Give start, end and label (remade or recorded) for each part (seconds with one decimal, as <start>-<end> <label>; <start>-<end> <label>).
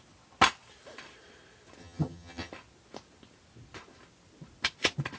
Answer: 0.0-1.8 recorded; 1.8-2.5 remade; 2.5-5.2 recorded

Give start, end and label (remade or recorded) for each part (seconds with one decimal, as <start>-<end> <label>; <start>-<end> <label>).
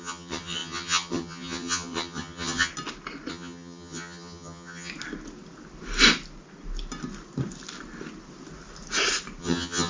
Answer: 0.0-2.7 remade; 2.7-3.3 recorded; 3.3-4.9 remade; 4.9-9.4 recorded; 9.4-9.9 remade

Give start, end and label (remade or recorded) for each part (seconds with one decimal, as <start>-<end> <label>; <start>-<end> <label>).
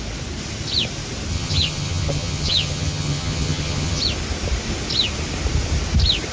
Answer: 0.0-1.3 recorded; 1.3-4.0 remade; 4.0-6.3 recorded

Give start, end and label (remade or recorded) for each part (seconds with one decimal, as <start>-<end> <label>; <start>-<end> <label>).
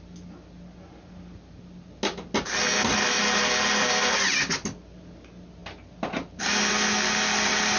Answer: 0.0-7.8 recorded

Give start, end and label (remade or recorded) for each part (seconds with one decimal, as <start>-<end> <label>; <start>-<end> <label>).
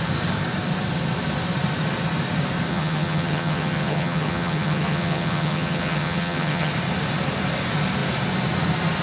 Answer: 0.0-2.7 recorded; 2.7-6.7 remade; 6.7-9.0 recorded